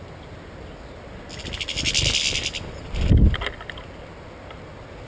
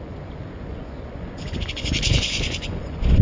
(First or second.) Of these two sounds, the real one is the first